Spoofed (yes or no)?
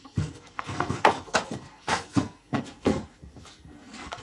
yes